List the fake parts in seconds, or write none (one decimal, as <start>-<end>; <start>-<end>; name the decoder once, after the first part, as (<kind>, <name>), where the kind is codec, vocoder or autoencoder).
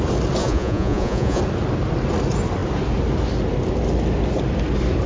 0.4-1.4 (vocoder, Vocos)